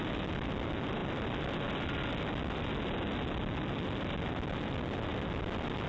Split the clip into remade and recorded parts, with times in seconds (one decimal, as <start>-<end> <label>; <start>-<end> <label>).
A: 0.0-5.9 recorded